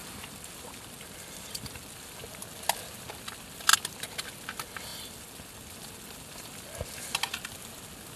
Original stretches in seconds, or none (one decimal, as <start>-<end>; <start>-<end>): 2.2-4.9; 7.0-8.2